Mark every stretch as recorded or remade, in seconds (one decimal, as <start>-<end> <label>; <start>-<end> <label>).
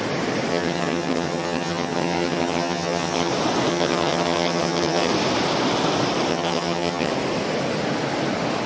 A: 0.0-0.5 recorded; 0.5-3.3 remade; 3.3-3.7 recorded; 3.7-5.1 remade; 5.1-6.3 recorded; 6.3-7.1 remade; 7.1-8.7 recorded